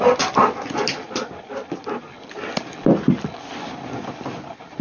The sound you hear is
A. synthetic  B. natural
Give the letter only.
B